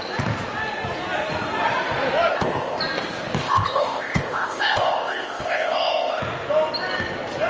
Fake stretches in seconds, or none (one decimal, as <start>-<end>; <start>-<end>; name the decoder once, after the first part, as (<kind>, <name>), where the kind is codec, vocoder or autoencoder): 2.3-2.8 (codec, ZipCodec); 3.4-6.2